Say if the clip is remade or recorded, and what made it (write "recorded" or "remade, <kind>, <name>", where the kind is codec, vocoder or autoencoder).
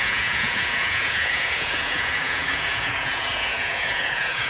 remade, vocoder, Vocos